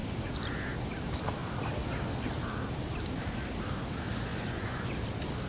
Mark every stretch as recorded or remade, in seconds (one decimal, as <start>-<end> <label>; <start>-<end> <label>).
0.0-4.3 recorded; 4.3-4.9 remade; 4.9-5.5 recorded